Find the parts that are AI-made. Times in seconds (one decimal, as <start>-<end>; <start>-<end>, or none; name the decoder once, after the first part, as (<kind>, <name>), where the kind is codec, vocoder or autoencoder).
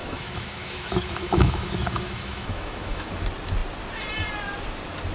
0.0-3.1 (autoencoder, DAC-VAE)